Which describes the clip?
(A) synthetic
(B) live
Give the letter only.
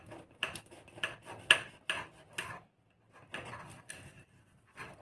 B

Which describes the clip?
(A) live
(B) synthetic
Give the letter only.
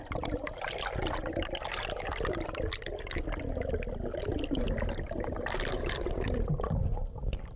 A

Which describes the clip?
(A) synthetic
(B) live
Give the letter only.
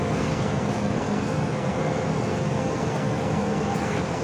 A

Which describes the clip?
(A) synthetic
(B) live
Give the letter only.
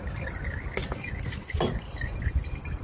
B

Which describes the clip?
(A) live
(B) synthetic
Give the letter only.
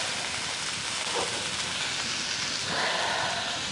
A